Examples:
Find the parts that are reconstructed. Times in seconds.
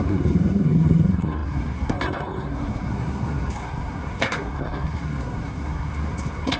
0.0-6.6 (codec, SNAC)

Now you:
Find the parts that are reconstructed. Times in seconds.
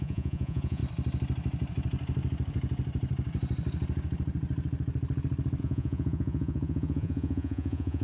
0.0-0.8 (vocoder, Vocos); 5.6-8.0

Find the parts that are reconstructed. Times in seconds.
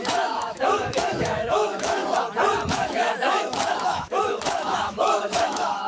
0.0-2.0 (autoencoder, DAC-VAE); 2.7-5.9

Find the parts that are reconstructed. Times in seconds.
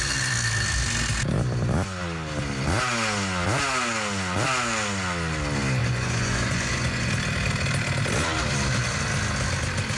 5.8-7.1 (vocoder, Vocos)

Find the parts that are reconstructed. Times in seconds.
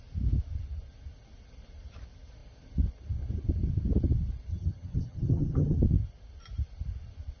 4.5-5.8 (vocoder, HiFi-GAN)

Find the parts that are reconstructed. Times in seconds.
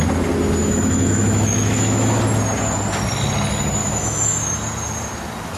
0.6-2.2 (autoencoder, DAC-VAE); 3.8-4.5